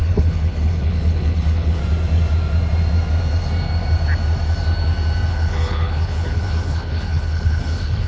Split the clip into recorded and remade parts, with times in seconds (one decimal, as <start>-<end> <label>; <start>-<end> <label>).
0.0-1.8 remade; 1.8-5.3 recorded; 5.3-8.1 remade

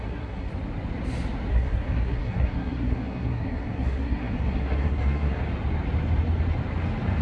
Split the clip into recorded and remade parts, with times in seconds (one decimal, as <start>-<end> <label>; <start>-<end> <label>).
0.0-0.5 remade; 0.5-1.5 recorded; 1.5-5.4 remade; 5.4-7.2 recorded

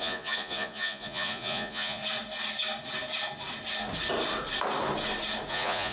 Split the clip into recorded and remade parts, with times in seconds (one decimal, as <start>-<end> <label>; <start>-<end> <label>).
0.0-2.0 remade; 2.0-5.5 recorded; 5.5-5.9 remade

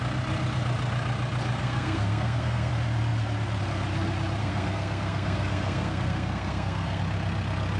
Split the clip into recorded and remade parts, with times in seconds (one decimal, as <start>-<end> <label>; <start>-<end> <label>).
0.0-1.6 recorded; 1.6-2.7 remade; 2.7-4.4 recorded; 4.4-7.0 remade; 7.0-7.8 recorded

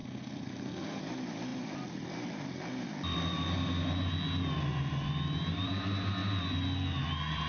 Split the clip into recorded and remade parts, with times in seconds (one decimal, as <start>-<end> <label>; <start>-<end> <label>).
0.0-1.0 remade; 1.0-7.5 recorded

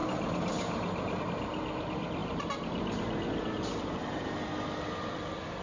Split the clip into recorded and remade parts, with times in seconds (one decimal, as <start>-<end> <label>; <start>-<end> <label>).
0.0-1.2 remade; 1.2-2.2 recorded; 2.2-4.5 remade; 4.5-5.6 recorded

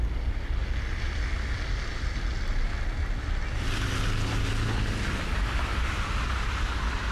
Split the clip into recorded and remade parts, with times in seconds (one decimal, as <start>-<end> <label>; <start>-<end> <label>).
0.0-7.1 recorded